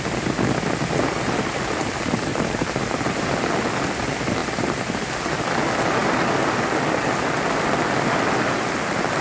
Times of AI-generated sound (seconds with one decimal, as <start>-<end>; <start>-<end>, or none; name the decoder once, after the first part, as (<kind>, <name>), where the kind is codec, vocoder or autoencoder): 2.3-3.5 (vocoder, BigVGAN v2)